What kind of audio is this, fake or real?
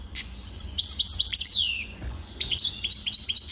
fake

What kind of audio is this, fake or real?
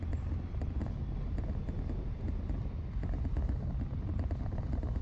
real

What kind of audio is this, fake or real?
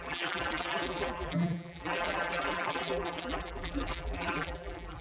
fake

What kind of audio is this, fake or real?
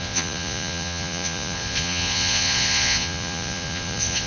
fake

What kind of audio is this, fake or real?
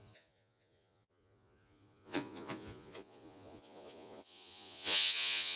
fake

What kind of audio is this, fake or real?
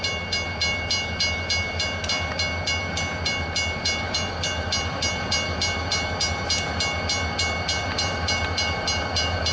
real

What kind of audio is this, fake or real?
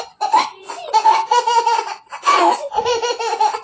fake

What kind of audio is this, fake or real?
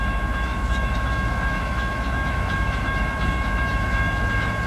fake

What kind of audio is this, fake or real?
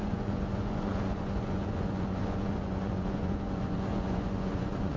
fake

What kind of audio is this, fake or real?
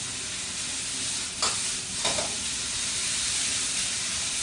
real